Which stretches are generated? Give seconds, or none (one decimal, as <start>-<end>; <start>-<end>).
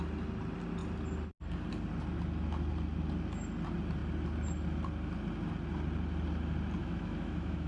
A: 6.8-7.7